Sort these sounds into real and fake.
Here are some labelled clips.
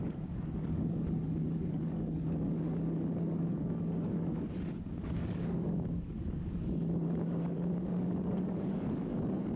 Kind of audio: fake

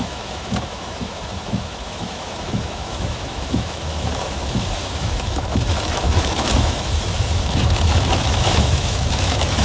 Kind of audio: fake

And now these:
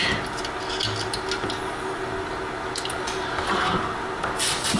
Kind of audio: real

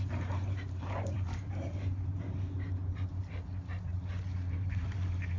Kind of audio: fake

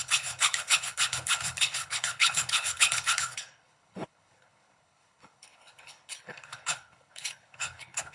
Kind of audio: fake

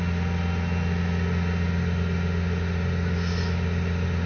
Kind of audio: real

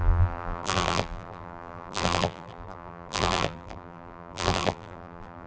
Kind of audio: fake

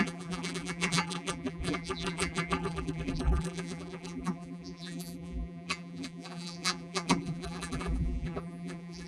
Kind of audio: fake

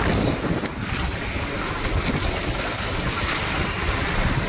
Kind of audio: real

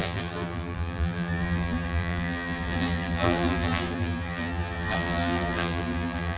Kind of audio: fake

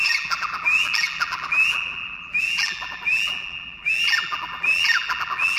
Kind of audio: fake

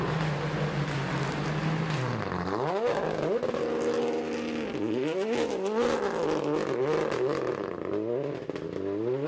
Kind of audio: real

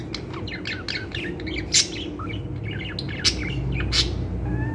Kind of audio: real